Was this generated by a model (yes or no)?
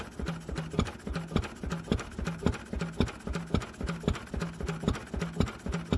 no